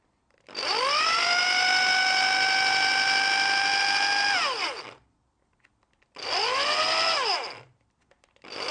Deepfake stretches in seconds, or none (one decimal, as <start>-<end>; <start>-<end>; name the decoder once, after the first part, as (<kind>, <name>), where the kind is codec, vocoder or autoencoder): none